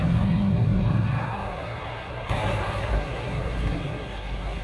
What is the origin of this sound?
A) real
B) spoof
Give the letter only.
B